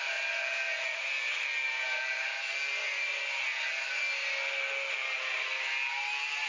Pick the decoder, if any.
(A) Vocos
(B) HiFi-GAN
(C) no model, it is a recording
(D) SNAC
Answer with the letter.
C